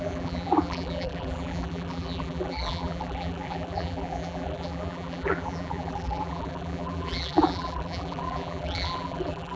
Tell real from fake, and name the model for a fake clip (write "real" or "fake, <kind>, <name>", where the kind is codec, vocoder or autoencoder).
fake, vocoder, BigVGAN v2